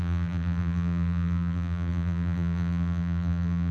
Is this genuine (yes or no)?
no